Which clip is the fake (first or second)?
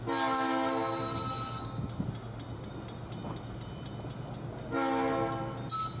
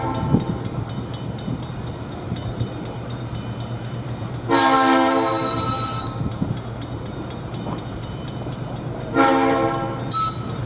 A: second